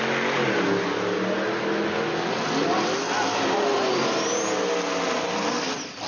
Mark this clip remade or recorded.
recorded